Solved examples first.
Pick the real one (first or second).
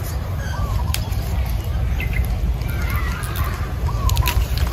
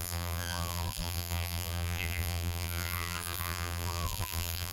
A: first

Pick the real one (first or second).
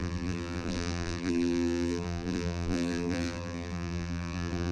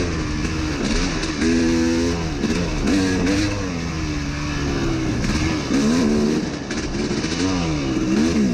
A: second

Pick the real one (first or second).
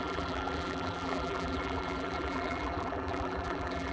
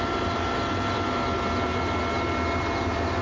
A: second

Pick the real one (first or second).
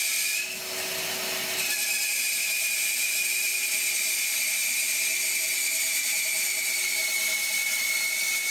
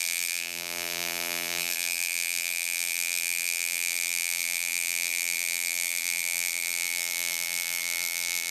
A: first